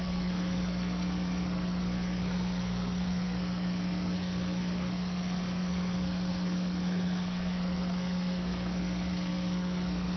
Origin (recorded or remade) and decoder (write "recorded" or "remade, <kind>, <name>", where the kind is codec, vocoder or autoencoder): remade, codec, SNAC